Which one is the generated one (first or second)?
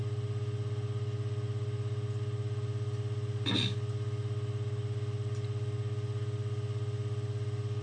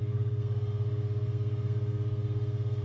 second